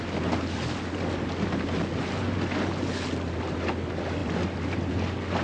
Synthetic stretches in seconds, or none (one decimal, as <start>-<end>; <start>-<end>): 4.2-4.9